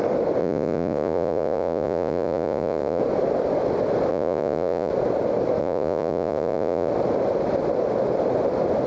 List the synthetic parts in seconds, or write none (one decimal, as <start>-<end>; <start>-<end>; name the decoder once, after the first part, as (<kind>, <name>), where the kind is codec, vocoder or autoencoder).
0.4-3.0 (vocoder, Vocos); 4.1-4.9; 5.6-6.9